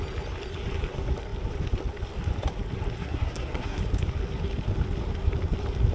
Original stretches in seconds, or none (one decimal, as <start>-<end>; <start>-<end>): 0.0-3.0; 3.8-5.9